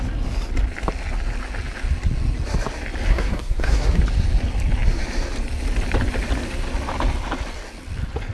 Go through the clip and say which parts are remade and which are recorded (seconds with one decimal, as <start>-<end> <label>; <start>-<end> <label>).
0.0-3.1 recorded; 3.1-4.0 remade; 4.0-8.3 recorded